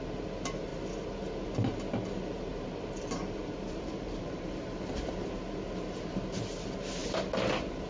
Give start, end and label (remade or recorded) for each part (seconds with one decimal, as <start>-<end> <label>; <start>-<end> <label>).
0.0-2.5 recorded; 2.5-5.1 remade; 5.1-7.9 recorded